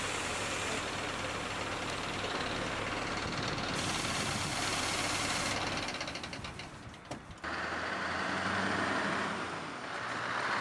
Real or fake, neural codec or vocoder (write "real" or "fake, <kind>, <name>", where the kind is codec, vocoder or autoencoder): real